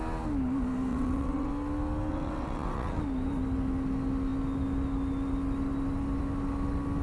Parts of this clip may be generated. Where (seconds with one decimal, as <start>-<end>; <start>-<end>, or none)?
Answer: 0.9-1.5; 2.1-3.0